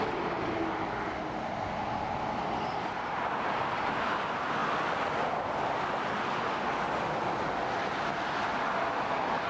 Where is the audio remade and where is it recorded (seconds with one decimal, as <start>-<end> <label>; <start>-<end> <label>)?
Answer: 0.0-9.5 recorded